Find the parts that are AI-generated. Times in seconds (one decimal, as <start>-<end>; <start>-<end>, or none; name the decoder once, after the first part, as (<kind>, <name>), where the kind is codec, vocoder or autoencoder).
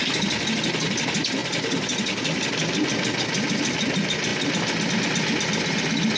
none